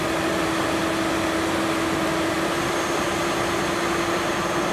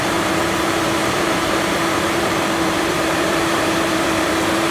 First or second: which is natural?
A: first